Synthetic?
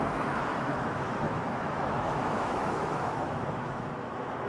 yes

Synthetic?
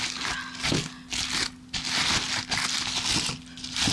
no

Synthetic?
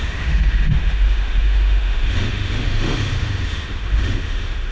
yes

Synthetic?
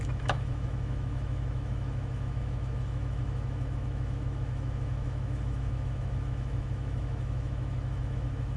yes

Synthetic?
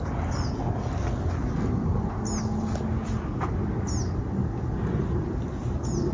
no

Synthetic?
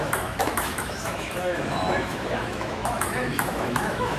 yes